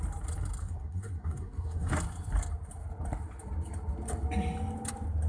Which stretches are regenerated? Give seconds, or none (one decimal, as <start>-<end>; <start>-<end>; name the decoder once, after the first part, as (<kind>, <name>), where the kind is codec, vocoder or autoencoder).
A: 0.6-1.9 (codec, SNAC)